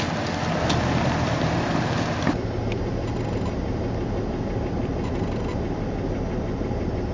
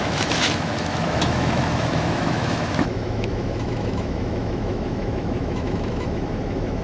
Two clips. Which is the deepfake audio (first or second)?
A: second